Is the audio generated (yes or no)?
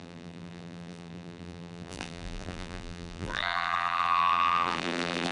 yes